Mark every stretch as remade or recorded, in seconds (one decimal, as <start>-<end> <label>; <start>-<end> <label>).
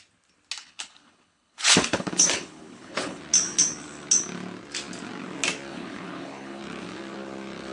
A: 0.0-0.6 recorded; 0.6-3.2 remade; 3.2-5.7 recorded; 5.7-6.6 remade; 6.6-7.7 recorded